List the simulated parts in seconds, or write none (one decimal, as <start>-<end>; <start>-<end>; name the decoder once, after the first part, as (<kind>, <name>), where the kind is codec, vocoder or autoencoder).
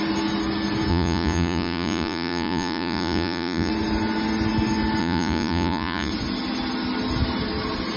0.9-3.7 (vocoder, Vocos); 5.0-6.1